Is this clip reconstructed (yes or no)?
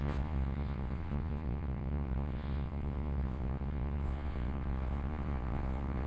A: yes